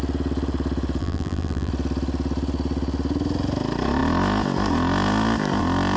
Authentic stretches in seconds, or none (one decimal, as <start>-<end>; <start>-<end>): 0.0-1.0; 1.7-6.0